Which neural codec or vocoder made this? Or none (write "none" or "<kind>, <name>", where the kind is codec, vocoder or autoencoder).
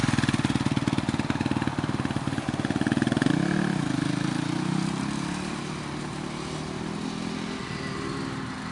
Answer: none